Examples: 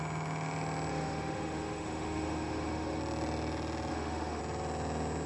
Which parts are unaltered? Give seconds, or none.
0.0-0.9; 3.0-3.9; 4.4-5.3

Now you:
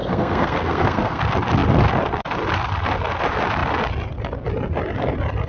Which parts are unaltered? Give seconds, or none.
1.2-5.5